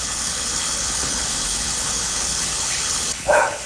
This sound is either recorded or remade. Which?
remade